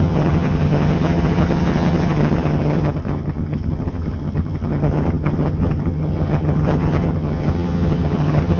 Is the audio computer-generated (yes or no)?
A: yes